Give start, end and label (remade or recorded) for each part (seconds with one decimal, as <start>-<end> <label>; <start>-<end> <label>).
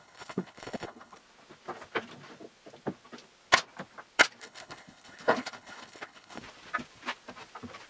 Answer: 0.0-1.2 remade; 1.2-4.4 recorded; 4.4-6.4 remade; 6.4-7.9 recorded